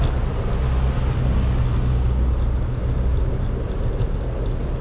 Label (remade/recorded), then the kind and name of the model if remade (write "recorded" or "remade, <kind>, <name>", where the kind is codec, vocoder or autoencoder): recorded